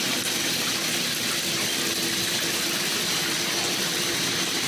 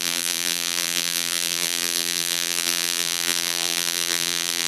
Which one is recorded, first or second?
first